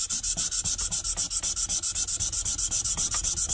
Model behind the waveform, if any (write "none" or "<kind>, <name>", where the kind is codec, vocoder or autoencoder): none